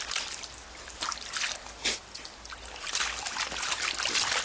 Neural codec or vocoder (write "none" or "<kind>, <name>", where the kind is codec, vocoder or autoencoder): none